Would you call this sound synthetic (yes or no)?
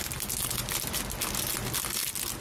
no